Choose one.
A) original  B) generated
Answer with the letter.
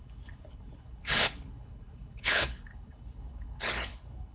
B